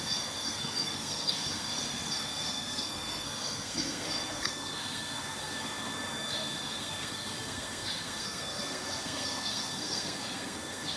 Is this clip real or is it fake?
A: fake